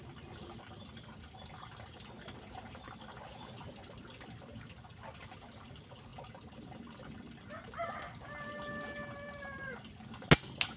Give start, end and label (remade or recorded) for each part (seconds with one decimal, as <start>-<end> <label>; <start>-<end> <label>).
0.0-10.8 recorded